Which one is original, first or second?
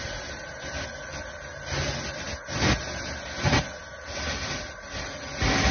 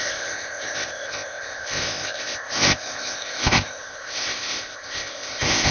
first